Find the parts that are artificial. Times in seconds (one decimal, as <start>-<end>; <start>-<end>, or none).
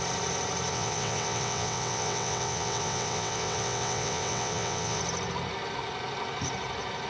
0.7-5.0